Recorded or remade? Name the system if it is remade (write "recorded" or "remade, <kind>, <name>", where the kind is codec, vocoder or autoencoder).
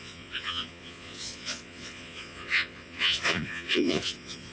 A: remade, vocoder, Vocos